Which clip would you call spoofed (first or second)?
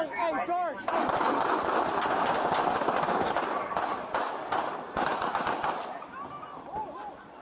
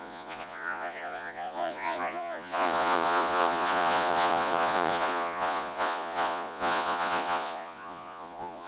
second